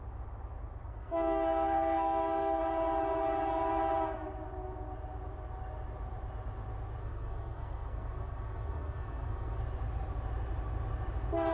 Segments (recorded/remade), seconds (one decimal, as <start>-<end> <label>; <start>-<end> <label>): 0.0-0.8 recorded; 0.8-2.6 remade; 2.6-7.0 recorded; 7.0-9.6 remade; 9.6-11.5 recorded